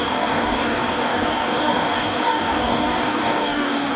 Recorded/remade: remade